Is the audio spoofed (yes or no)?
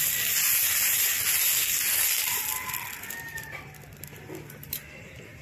no